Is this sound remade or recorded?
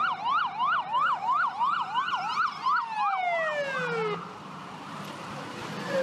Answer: recorded